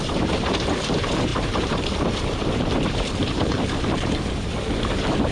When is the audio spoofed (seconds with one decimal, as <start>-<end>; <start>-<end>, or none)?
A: 0.0-5.3